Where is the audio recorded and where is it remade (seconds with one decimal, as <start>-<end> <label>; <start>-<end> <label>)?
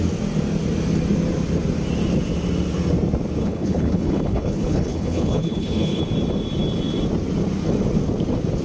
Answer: 0.0-3.4 recorded; 3.4-6.0 remade; 6.0-8.6 recorded